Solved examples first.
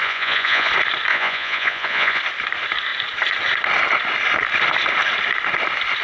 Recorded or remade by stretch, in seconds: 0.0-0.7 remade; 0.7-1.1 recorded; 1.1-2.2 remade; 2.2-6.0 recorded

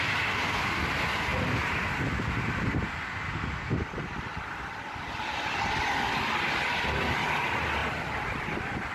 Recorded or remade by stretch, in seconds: 0.0-8.9 recorded